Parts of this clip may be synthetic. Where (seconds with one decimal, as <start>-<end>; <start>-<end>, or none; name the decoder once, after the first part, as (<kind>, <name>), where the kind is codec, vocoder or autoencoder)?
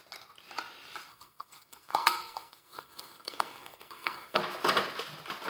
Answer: 1.1-4.4 (codec, SNAC)